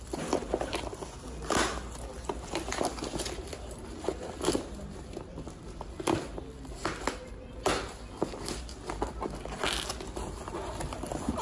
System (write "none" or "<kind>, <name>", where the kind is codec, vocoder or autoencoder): none